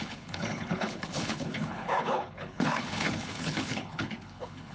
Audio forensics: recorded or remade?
remade